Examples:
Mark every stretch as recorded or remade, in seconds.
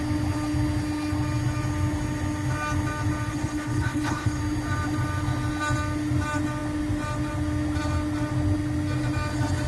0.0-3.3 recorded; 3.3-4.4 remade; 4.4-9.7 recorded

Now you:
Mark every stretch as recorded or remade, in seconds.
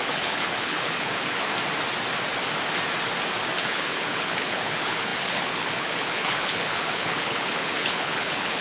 0.0-1.5 remade; 1.5-3.6 recorded; 3.6-8.6 remade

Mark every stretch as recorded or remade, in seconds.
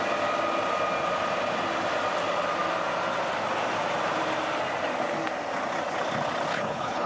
0.0-6.5 recorded; 6.5-7.1 remade